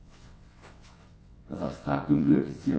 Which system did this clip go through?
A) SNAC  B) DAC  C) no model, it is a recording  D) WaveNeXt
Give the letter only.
D